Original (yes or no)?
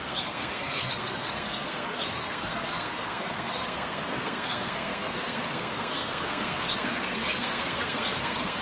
no